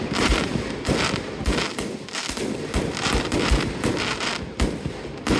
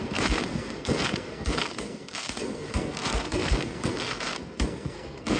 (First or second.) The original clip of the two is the first